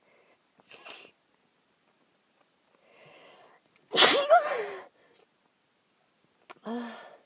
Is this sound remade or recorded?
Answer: recorded